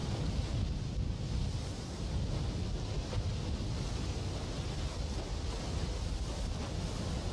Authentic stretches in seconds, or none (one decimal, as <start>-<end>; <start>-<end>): 0.0-7.3